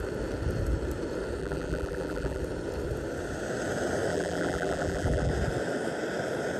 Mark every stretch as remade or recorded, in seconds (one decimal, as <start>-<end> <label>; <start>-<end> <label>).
0.0-1.4 recorded; 1.4-2.4 remade; 2.4-4.1 recorded; 4.1-5.3 remade; 5.3-6.6 recorded